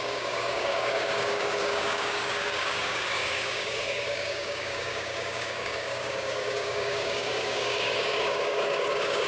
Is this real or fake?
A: fake